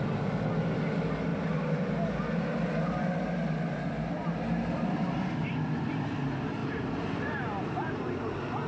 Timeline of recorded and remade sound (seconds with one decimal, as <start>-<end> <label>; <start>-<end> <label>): 0.0-1.3 recorded; 1.3-1.9 remade; 1.9-4.2 recorded; 4.2-5.8 remade; 5.8-6.6 recorded; 6.6-8.2 remade; 8.2-8.7 recorded